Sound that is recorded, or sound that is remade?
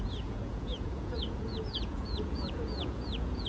remade